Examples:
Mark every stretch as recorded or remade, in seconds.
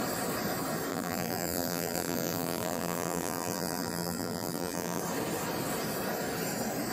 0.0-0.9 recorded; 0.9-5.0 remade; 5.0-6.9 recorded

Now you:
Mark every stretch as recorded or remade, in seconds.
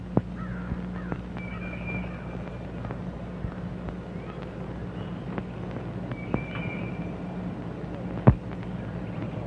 0.0-9.5 recorded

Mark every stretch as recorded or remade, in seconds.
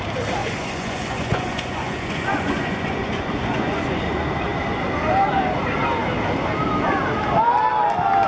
0.0-0.4 recorded; 0.4-4.0 remade; 4.0-8.3 recorded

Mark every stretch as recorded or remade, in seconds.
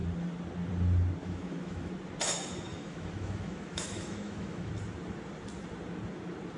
0.0-1.2 recorded; 1.2-1.9 remade; 1.9-2.7 recorded; 2.7-4.7 remade; 4.7-6.6 recorded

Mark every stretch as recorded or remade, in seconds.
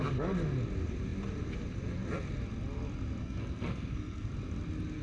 0.0-3.2 recorded; 3.2-4.3 remade; 4.3-5.0 recorded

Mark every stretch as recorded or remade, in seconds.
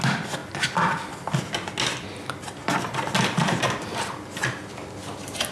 0.0-5.5 recorded